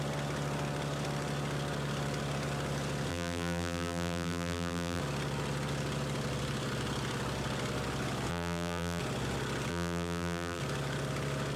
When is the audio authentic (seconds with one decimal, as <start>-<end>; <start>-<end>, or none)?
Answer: 0.0-3.1; 5.0-8.3; 9.0-9.7; 10.6-11.6